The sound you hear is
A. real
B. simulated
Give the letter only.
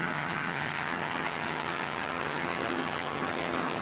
B